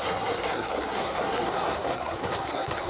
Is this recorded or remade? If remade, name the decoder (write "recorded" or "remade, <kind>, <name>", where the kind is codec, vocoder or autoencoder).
remade, codec, SNAC